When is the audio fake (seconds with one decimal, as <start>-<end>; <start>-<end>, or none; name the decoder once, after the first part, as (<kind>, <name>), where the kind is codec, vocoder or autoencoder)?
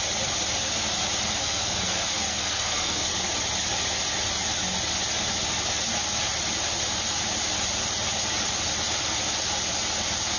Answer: 1.4-3.1 (codec, SNAC)